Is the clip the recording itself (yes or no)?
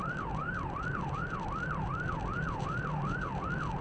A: no